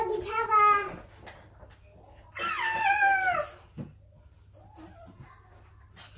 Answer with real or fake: real